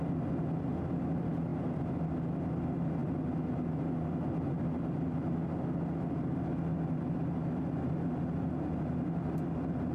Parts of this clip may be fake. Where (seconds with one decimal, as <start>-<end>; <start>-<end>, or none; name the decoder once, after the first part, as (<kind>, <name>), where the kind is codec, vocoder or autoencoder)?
none

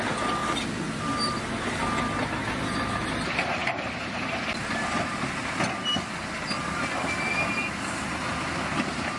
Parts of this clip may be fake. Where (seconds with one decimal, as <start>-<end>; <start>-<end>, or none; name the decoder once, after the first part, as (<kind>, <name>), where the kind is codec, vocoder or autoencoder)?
3.6-5.1 (vocoder, BigVGAN v2)

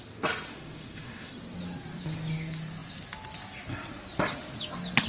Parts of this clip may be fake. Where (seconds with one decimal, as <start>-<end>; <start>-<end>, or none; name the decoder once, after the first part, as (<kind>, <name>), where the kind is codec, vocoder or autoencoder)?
0.5-1.3 (autoencoder, DAC-VAE)